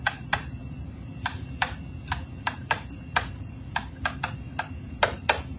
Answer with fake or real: fake